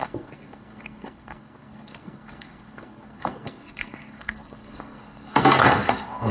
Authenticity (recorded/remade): remade